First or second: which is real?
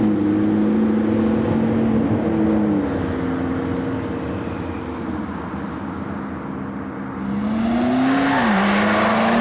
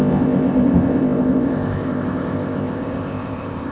first